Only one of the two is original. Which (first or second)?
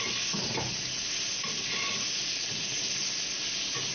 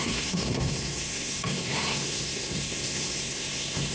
first